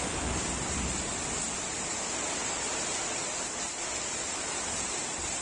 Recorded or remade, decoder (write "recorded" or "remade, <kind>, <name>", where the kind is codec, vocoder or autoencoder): recorded